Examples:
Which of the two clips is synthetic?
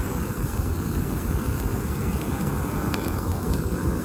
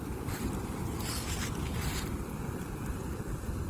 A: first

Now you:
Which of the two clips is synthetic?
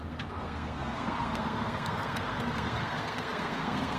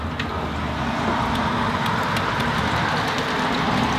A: first